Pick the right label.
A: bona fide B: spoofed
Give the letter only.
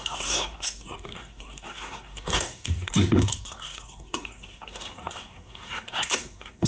B